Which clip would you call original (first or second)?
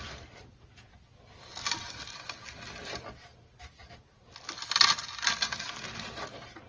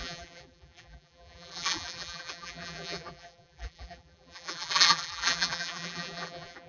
first